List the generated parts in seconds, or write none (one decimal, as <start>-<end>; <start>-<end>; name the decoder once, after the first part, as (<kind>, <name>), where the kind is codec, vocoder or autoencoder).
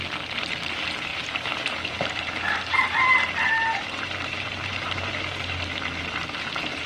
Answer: 1.1-5.1 (vocoder, BigVGAN v2)